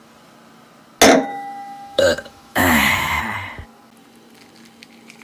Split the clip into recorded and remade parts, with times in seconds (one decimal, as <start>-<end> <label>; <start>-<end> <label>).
0.0-1.3 recorded; 1.3-3.2 remade; 3.2-5.2 recorded